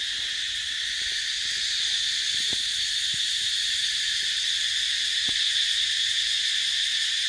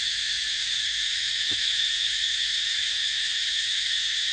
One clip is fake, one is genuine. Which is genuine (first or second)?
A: first